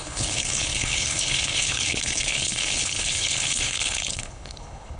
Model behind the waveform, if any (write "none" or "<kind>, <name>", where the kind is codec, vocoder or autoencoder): codec, HILCodec